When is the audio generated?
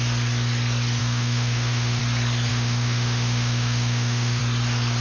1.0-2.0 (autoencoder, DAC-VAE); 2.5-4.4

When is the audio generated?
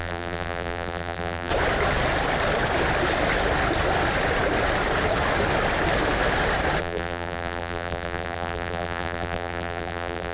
0.0-1.5 (vocoder, BigVGAN v2); 6.8-10.3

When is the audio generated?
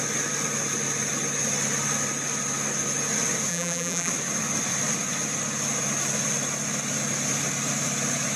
3.5-4.1 (vocoder, BigVGAN v2)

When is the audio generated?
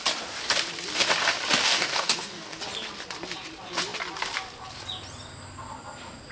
1.6-2.6 (codec, DAC)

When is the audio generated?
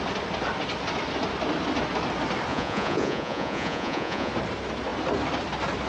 2.5-4.3 (vocoder, Vocos)